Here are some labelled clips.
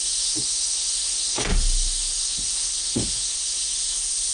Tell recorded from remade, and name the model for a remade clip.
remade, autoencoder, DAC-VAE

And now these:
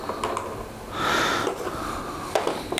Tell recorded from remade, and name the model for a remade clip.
recorded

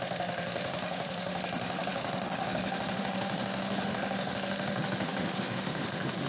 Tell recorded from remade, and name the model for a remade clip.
remade, autoencoder, DAC-VAE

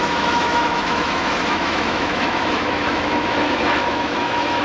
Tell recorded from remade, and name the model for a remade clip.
remade, autoencoder, DAC-VAE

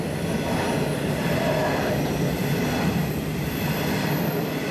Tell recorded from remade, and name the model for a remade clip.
recorded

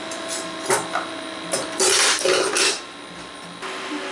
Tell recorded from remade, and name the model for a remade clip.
recorded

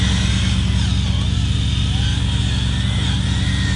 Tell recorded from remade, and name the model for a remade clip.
recorded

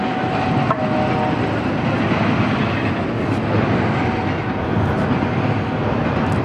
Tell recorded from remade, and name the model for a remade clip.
recorded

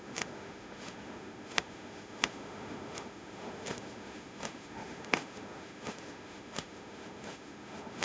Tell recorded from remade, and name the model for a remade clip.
remade, autoencoder, DAC-VAE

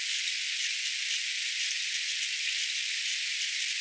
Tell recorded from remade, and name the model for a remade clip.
recorded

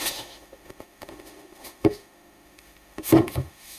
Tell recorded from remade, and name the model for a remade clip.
remade, autoencoder, DAC-VAE